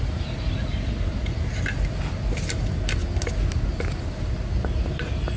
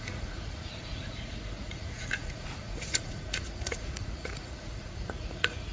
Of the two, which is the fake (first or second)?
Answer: second